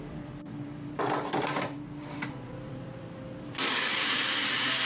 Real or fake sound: fake